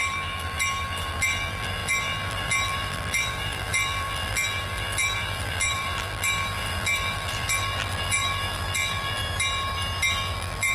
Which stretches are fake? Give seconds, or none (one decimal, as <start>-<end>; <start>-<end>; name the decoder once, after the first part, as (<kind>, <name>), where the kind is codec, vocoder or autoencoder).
0.0-9.2 (vocoder, BigVGAN v2); 10.1-10.7